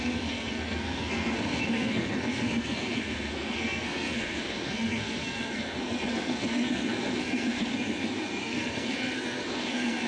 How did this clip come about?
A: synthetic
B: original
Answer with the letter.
A